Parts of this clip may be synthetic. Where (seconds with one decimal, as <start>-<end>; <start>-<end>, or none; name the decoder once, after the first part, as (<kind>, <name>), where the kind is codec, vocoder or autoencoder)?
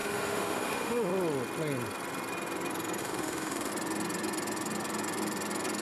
0.0-1.1 (autoencoder, DAC-VAE); 3.0-3.7